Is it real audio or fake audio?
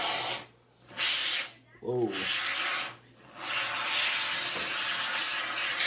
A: real